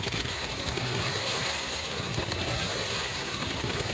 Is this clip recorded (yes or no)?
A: no